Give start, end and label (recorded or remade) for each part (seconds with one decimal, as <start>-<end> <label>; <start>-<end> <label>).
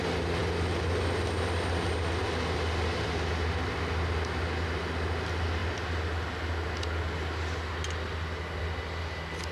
0.0-9.5 recorded